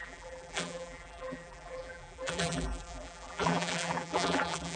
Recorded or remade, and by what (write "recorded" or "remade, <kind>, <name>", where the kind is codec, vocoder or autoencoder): remade, vocoder, BigVGAN v2